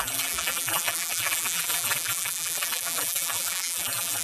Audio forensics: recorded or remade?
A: remade